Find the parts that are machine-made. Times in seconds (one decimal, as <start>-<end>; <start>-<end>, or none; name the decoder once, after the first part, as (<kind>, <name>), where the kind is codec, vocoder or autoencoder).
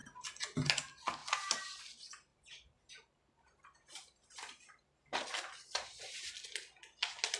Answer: 1.2-1.8 (vocoder, BigVGAN v2); 2.3-6.2